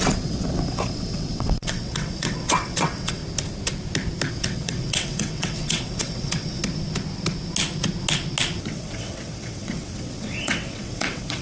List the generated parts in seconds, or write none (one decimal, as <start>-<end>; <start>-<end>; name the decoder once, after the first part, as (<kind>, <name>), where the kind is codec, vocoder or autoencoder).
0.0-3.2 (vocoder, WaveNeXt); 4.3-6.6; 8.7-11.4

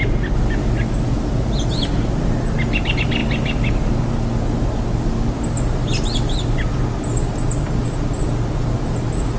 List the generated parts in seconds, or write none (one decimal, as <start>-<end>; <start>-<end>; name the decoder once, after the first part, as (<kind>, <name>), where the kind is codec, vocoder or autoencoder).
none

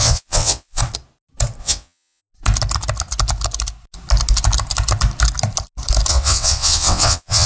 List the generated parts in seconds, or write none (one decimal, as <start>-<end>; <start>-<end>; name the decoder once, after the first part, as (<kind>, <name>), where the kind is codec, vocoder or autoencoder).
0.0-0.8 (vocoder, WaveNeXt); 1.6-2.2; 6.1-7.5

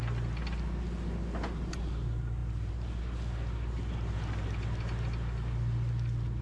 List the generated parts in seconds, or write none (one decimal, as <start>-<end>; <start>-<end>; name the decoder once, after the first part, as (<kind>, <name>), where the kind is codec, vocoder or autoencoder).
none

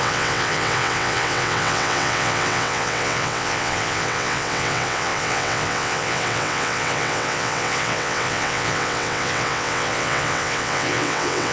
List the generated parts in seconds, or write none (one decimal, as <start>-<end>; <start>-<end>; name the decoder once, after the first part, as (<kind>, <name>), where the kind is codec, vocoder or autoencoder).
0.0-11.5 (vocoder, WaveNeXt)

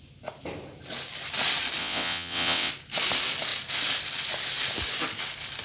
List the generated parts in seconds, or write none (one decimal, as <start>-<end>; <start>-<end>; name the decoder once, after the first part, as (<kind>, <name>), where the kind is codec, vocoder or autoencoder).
1.8-2.7 (vocoder, WaveNeXt)

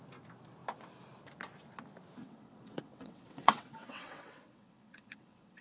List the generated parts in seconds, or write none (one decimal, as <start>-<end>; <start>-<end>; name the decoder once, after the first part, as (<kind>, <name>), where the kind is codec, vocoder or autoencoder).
2.2-5.6 (vocoder, WaveNeXt)

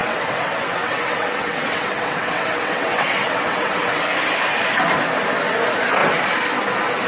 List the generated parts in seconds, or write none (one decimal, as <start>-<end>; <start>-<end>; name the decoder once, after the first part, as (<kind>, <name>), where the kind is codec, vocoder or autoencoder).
0.0-4.1 (vocoder, WaveNeXt)